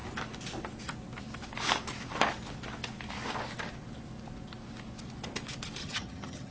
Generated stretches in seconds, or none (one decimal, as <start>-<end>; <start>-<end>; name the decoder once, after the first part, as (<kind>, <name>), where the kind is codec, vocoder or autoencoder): 5.8-6.5 (vocoder, HiFi-GAN)